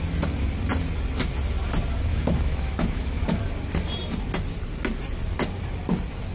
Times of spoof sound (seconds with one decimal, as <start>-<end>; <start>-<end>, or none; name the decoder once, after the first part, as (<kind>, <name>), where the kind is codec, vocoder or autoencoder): 2.1-3.4 (autoencoder, DAC-VAE)